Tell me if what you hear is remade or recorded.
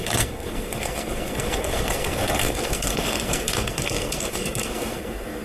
remade